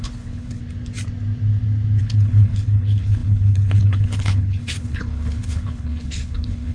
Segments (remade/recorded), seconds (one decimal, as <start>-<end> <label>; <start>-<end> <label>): 0.0-0.6 remade; 0.6-2.0 recorded; 2.0-6.7 remade